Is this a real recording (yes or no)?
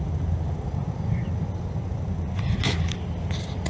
yes